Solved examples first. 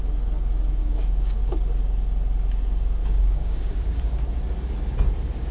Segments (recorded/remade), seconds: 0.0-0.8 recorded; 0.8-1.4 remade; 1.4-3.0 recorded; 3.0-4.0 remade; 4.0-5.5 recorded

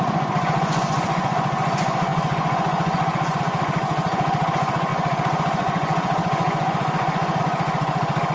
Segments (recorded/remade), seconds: 0.0-8.3 remade

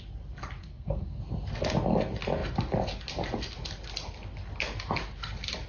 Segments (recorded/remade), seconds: 0.0-0.6 recorded; 0.6-1.2 remade; 1.2-5.7 recorded

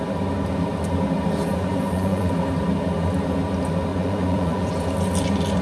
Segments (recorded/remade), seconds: 0.0-1.5 recorded; 1.5-2.3 remade; 2.3-3.9 recorded; 3.9-4.7 remade; 4.7-5.6 recorded

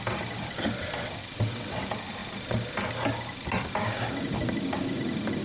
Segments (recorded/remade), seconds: 0.0-1.2 recorded; 1.2-1.8 remade; 1.8-5.4 recorded

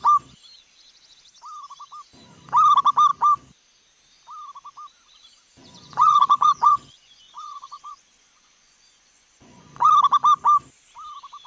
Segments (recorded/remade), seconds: 0.0-5.6 recorded; 5.6-9.9 remade; 9.9-11.5 recorded

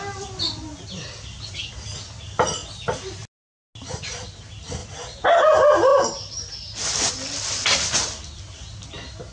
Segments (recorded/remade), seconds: 0.0-9.3 recorded